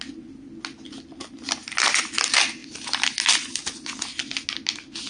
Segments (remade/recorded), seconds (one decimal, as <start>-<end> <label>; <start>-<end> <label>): 0.0-5.1 recorded